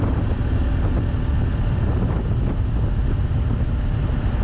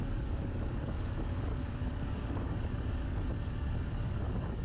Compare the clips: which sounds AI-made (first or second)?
second